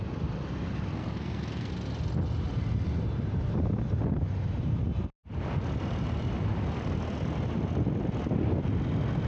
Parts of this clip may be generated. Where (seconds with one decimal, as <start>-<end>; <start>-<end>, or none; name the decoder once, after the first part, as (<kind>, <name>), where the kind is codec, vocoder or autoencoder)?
0.9-1.7 (codec, SNAC)